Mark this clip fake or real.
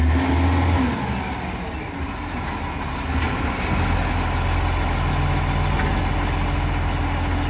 real